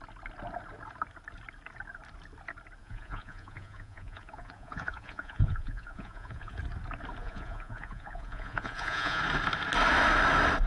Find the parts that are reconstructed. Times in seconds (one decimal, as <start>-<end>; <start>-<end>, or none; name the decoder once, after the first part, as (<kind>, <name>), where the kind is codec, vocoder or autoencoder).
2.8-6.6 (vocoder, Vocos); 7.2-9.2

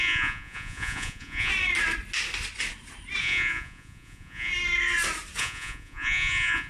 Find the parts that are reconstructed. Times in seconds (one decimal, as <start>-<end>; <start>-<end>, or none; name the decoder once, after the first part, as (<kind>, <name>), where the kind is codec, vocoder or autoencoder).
0.0-1.5 (vocoder, Vocos); 3.2-4.5; 5.4-6.7

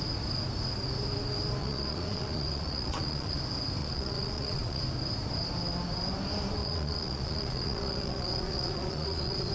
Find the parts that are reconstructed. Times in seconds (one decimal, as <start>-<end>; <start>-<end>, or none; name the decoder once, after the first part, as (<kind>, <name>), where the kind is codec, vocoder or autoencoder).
1.6-3.4 (vocoder, Vocos); 3.8-4.8; 6.6-9.5

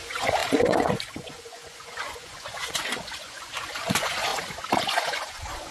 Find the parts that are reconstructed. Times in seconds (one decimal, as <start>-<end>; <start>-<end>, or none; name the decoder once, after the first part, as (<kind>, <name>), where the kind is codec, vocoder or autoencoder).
0.0-4.3 (vocoder, Vocos); 4.8-5.7

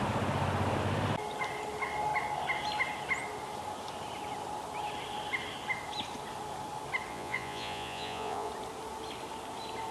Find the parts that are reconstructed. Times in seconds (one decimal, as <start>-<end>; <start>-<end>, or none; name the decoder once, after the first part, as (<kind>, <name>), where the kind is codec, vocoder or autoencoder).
7.1-8.5 (vocoder, Vocos)